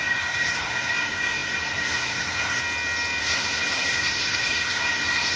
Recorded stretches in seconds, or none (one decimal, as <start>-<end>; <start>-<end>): 2.6-3.2